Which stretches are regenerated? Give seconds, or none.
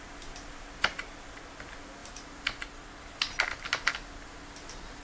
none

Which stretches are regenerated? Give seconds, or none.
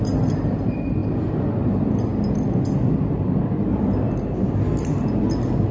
1.0-1.6 (vocoder, BigVGAN v2); 2.1-5.7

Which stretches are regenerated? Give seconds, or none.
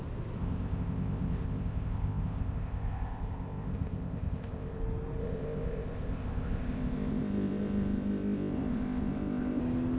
0.4-4.8 (codec, ZipCodec); 5.2-9.6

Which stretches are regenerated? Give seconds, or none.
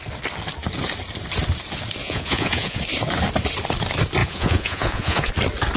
2.0-2.8 (vocoder, Vocos); 4.2-5.3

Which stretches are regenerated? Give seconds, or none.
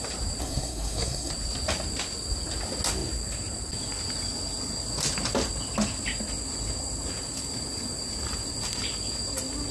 0.4-1.3 (codec, SNAC)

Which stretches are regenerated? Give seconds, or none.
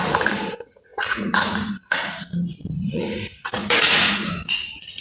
0.0-5.0 (vocoder, Vocos)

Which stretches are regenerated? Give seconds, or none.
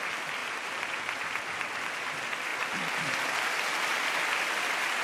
none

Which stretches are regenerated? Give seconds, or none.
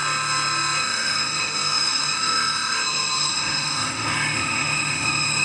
0.8-5.4 (autoencoder, DAC-VAE)